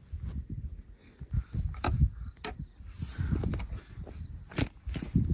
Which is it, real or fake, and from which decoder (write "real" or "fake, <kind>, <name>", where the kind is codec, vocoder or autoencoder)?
real